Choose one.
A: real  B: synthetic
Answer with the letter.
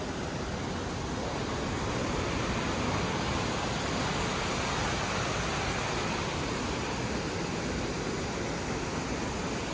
A